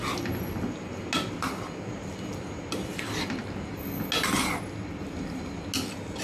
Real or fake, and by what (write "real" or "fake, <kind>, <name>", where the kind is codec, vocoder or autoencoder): real